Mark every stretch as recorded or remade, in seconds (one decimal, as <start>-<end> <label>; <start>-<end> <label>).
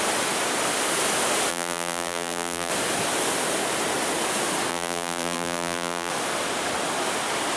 0.0-1.5 recorded; 1.5-2.7 remade; 2.7-4.7 recorded; 4.7-6.1 remade; 6.1-7.6 recorded